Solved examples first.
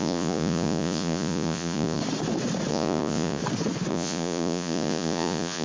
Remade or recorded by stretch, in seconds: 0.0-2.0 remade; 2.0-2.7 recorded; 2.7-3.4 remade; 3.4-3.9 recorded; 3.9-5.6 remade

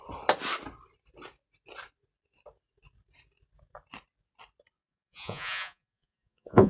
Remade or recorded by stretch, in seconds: 0.0-4.8 recorded; 4.8-6.7 remade

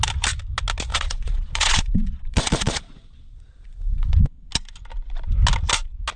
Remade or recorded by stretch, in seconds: 0.0-0.9 recorded; 0.9-4.5 remade; 4.5-6.2 recorded

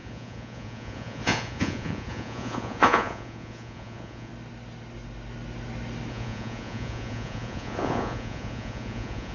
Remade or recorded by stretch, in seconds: 0.0-4.3 remade; 4.3-6.1 recorded; 6.1-9.3 remade

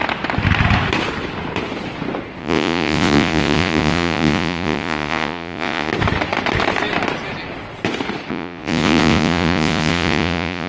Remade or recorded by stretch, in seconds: 0.0-2.4 recorded; 2.4-5.9 remade; 5.9-8.3 recorded; 8.3-10.7 remade

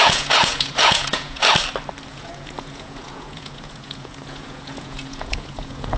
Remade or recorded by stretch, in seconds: 0.0-1.4 remade; 1.4-2.1 recorded; 2.1-6.0 remade

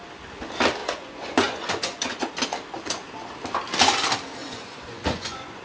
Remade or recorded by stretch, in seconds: 0.0-0.8 recorded; 0.8-2.3 remade; 2.3-4.4 recorded; 4.4-5.6 remade

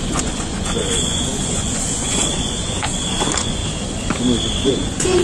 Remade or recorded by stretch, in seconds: 0.0-3.6 remade; 3.6-4.6 recorded; 4.6-5.2 remade